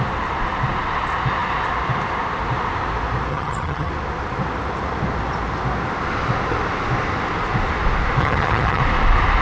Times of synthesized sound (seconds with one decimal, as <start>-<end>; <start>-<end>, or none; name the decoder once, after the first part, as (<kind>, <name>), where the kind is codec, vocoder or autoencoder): 3.3-3.9 (vocoder, HiFi-GAN); 8.2-8.8

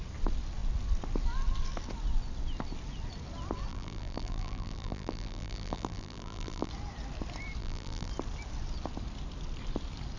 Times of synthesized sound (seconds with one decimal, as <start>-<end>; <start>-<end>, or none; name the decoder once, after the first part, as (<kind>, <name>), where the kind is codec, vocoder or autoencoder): 3.7-6.7 (vocoder, BigVGAN v2); 7.6-8.1

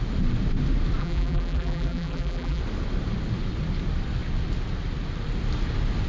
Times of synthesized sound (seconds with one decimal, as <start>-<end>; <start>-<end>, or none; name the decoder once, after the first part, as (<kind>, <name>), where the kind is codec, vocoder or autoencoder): 1.0-2.6 (vocoder, BigVGAN v2)

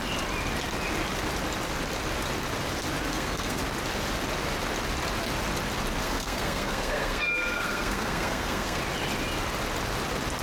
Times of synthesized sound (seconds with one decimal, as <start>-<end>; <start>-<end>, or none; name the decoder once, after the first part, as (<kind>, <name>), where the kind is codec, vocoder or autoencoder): 3.1-3.6 (codec, SNAC); 6.0-8.8

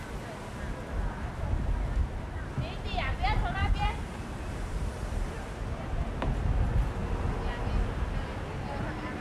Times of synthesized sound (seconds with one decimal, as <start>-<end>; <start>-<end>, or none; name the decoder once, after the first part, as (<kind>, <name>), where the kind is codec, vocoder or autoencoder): 2.0-2.5 (vocoder, BigVGAN v2); 3.6-5.6

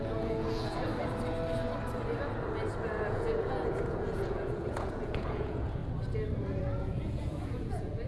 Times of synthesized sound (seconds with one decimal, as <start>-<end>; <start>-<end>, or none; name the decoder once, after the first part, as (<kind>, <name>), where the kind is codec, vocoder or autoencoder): 0.0-0.9 (vocoder, Vocos); 3.1-5.8; 6.6-8.1

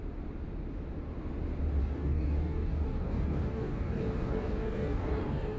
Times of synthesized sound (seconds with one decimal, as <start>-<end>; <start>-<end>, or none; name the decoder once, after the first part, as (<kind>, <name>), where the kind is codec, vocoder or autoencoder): 1.8-5.6 (codec, DAC)

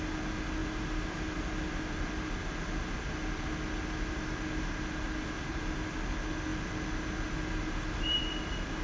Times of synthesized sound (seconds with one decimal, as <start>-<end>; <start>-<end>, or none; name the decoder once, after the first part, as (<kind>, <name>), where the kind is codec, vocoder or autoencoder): none